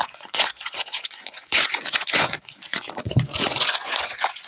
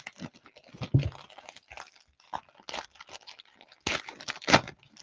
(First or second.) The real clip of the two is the second